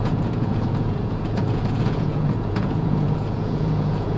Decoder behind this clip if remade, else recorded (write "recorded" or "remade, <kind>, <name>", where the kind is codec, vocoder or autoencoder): remade, vocoder, Vocos